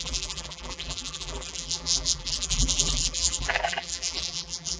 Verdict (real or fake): fake